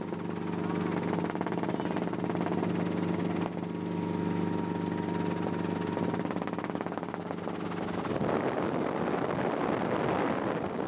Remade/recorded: recorded